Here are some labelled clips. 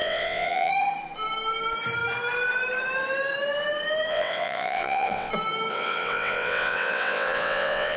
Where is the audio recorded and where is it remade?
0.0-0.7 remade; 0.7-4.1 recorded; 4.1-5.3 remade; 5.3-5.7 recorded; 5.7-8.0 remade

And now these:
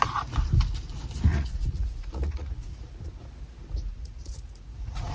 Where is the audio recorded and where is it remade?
0.0-1.3 recorded; 1.3-2.9 remade; 2.9-3.9 recorded; 3.9-5.1 remade

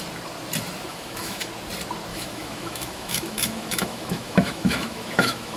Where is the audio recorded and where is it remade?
0.0-0.9 recorded; 0.9-1.5 remade; 1.5-2.1 recorded; 2.1-5.6 remade

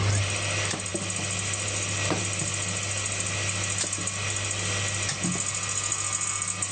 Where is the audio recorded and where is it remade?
0.0-6.7 recorded